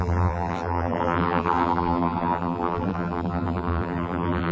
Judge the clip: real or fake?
fake